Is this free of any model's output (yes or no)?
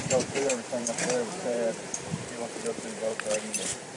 no